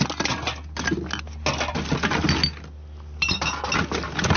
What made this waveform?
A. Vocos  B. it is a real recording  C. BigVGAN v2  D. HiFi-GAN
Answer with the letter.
B